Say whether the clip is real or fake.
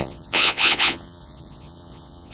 fake